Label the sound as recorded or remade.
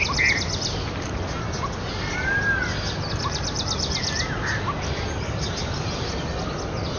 recorded